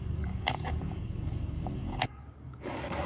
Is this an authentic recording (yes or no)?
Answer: no